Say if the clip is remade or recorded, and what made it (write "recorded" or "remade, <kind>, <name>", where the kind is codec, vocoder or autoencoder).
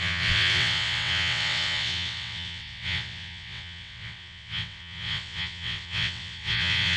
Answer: remade, vocoder, WaveNeXt